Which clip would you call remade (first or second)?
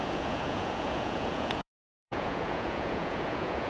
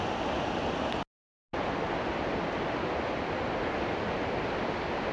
first